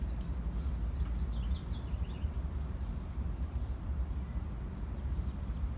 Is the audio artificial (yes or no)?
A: no